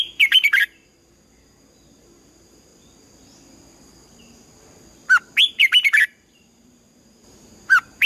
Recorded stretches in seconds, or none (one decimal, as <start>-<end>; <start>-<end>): 2.7-5.5